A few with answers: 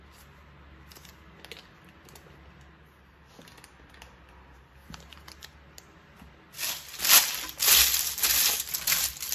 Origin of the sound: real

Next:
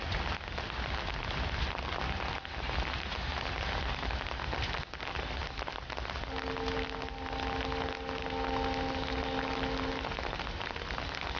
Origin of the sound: real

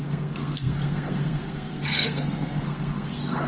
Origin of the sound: fake